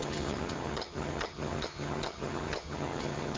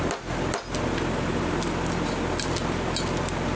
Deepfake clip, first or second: first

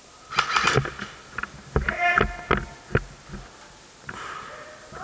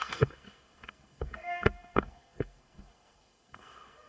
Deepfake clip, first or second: second